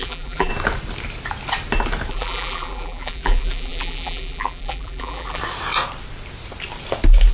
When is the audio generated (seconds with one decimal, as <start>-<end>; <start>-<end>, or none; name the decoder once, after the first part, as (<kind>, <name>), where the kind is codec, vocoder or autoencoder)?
0.0-0.5 (vocoder, BigVGAN v2); 2.1-5.4